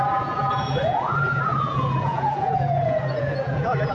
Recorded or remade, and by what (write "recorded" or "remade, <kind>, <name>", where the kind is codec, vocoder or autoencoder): remade, vocoder, Vocos